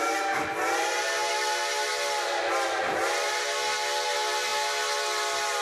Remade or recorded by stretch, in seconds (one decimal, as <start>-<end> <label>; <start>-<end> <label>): 0.0-5.6 recorded